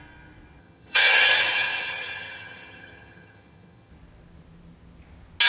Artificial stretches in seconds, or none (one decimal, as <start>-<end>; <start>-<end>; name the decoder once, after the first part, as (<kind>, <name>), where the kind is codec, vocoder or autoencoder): 0.6-3.9 (vocoder, HiFi-GAN)